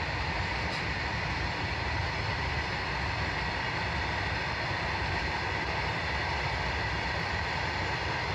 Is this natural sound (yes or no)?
yes